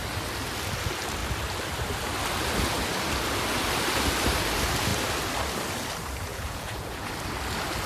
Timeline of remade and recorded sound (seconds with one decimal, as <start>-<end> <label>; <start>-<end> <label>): 0.0-6.3 recorded; 6.3-7.1 remade; 7.1-7.9 recorded